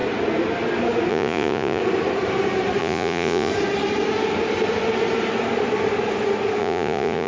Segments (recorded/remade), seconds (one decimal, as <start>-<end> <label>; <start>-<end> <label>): 0.0-1.1 recorded; 1.1-1.8 remade; 1.8-2.8 recorded; 2.8-3.5 remade; 3.5-6.6 recorded; 6.6-7.3 remade